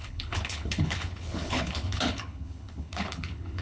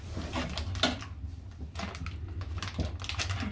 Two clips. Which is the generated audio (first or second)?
first